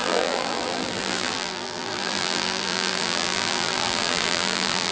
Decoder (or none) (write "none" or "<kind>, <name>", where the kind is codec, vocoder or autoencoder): vocoder, BigVGAN v2